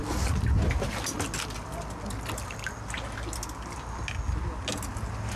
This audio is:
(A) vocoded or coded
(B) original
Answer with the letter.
B